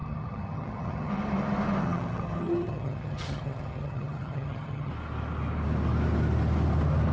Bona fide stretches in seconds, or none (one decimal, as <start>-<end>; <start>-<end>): 1.1-1.8; 4.9-7.1